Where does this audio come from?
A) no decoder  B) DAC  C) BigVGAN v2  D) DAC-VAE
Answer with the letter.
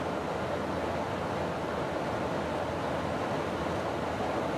A